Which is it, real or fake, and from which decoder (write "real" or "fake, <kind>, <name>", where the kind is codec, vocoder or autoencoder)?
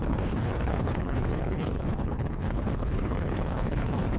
fake, codec, HILCodec